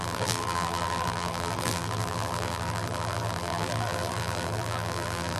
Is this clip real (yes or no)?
no